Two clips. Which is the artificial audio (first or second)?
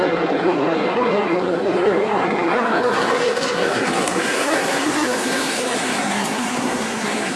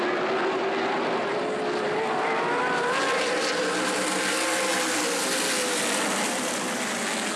first